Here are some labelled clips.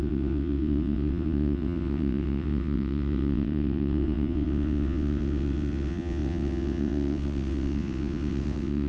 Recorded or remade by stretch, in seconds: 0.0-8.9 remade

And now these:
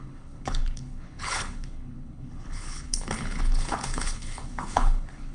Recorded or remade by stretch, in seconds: 0.0-5.3 remade